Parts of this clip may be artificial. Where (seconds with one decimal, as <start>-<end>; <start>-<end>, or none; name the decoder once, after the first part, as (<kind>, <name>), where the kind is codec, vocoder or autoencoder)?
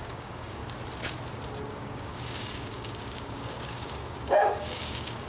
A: 0.0-0.6 (codec, DAC); 1.6-5.3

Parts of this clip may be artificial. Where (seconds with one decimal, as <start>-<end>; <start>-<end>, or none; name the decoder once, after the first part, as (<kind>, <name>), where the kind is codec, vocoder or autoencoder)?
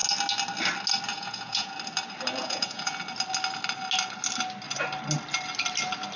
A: 1.1-1.7 (vocoder, Vocos); 2.4-3.0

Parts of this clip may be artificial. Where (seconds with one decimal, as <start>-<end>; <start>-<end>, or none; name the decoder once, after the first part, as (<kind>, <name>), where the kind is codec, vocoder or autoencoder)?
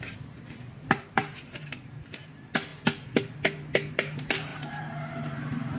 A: 0.0-2.7 (vocoder, BigVGAN v2); 3.9-5.8